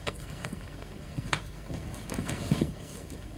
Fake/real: fake